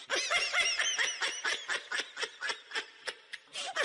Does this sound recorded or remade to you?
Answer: recorded